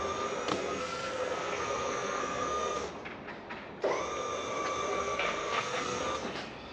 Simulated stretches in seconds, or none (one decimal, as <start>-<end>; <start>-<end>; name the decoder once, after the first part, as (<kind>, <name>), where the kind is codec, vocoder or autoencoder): 0.5-2.9 (codec, SNAC); 4.9-6.0